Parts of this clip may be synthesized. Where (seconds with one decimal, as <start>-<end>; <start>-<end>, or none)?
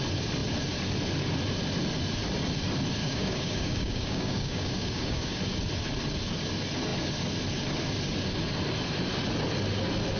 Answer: 3.0-5.4